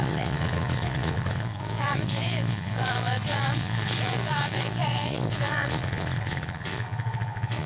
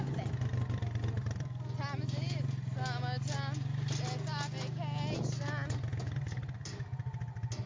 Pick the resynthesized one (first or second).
first